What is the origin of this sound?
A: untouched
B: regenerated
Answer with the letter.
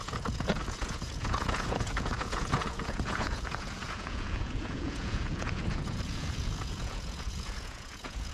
B